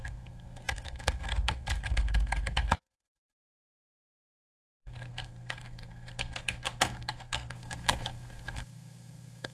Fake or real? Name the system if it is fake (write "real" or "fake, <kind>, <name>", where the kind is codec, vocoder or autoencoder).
fake, codec, SNAC